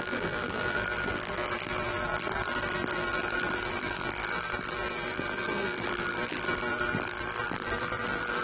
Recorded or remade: remade